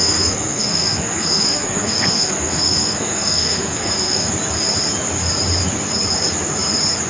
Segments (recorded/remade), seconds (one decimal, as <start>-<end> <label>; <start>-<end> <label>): 0.0-4.3 remade; 4.3-7.1 recorded